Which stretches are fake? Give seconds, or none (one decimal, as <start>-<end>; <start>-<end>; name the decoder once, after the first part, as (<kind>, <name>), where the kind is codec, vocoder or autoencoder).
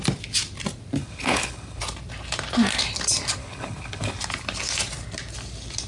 1.0-1.8 (codec, HILCodec); 3.4-4.2